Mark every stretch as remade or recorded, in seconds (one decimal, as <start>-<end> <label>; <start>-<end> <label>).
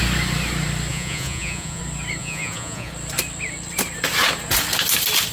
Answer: 0.0-0.9 recorded; 0.9-1.8 remade; 1.8-2.2 recorded; 2.2-2.9 remade; 2.9-5.3 recorded